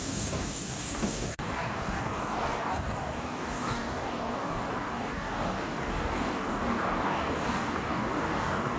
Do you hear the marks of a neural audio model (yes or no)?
yes